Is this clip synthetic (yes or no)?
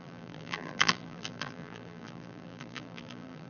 yes